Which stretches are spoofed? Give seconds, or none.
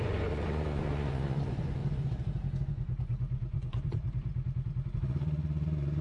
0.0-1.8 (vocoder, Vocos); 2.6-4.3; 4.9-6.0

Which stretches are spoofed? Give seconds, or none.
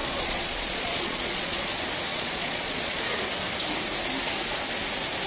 0.0-1.6 (vocoder, Vocos); 2.1-3.0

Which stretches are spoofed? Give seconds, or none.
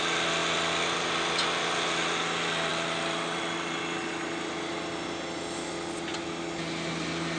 none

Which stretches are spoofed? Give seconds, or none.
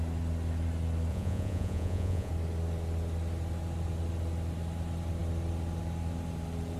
1.1-2.3 (vocoder, Vocos)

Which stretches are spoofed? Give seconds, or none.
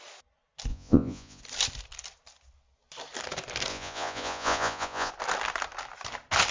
0.7-1.4 (vocoder, Vocos); 3.7-5.1